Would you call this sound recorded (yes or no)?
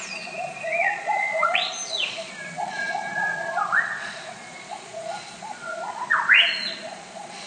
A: no